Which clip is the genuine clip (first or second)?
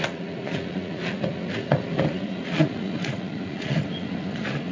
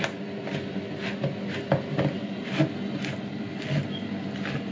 second